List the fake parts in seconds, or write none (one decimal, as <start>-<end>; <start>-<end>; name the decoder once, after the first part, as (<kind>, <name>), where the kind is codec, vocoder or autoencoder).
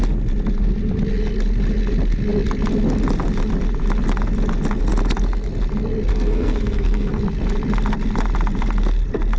6.1-7.2 (codec, SNAC)